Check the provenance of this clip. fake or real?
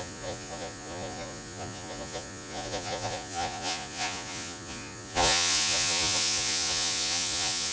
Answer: fake